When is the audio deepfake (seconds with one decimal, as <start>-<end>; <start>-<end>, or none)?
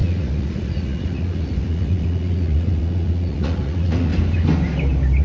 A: 0.0-4.1